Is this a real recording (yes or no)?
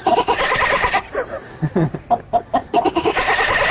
yes